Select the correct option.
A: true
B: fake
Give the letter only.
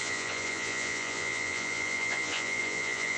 B